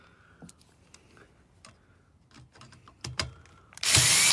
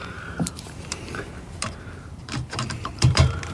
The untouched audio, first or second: first